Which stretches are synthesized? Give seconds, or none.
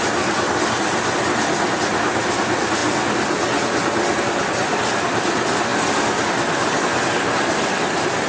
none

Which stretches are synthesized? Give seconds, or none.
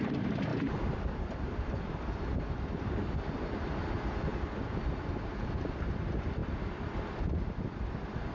0.5-3.9 (vocoder, BigVGAN v2); 4.3-4.8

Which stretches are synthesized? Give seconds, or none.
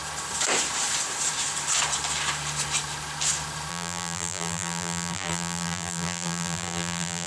3.7-7.3 (vocoder, BigVGAN v2)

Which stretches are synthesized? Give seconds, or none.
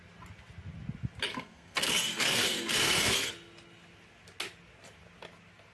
1.3-3.3 (codec, SNAC)